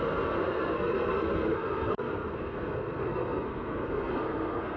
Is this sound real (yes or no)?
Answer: no